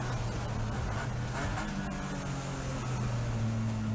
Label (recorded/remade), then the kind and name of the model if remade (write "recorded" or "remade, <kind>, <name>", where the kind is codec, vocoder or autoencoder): recorded